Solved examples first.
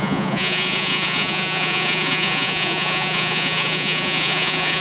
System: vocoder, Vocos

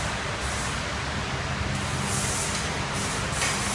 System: none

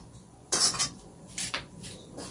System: vocoder, Vocos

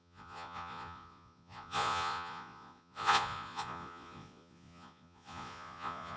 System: vocoder, Vocos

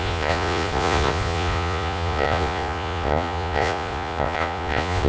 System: vocoder, Vocos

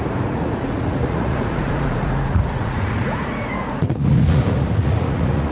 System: vocoder, Vocos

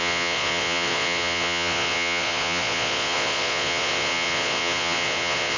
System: vocoder, Vocos